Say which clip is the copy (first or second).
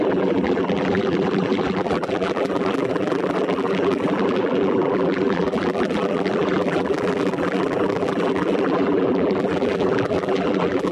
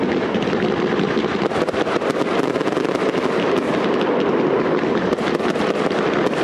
first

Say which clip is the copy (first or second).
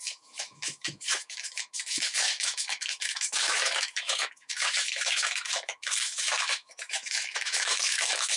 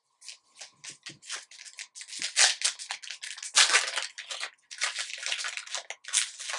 first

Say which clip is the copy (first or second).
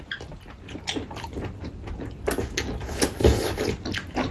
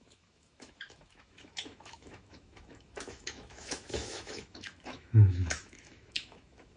second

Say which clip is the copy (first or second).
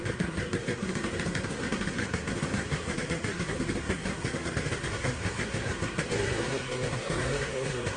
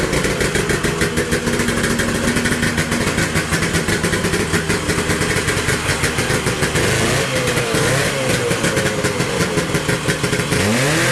first